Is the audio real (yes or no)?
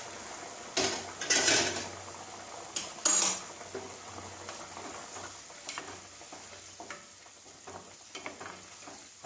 yes